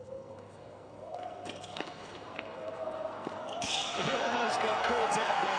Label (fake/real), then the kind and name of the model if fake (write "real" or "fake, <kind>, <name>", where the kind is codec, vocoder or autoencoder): fake, codec, SNAC